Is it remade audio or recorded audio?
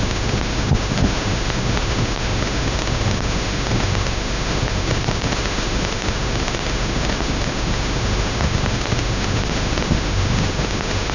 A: remade